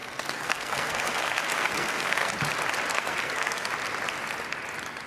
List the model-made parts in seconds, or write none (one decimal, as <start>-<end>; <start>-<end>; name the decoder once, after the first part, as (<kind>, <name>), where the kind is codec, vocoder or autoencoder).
0.0-2.3 (codec, SNAC); 2.9-3.7